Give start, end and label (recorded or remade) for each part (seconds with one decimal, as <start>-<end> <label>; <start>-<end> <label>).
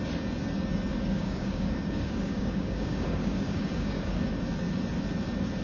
0.0-0.9 recorded; 0.9-4.3 remade; 4.3-5.6 recorded